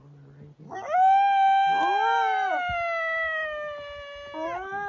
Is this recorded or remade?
recorded